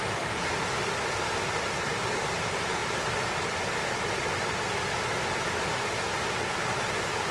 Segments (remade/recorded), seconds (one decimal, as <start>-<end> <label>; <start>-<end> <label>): 0.0-7.3 recorded